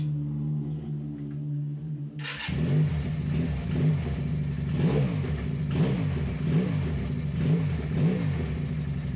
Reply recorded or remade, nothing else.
recorded